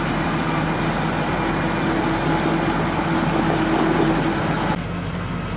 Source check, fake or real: real